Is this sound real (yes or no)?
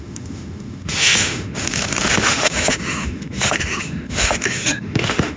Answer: no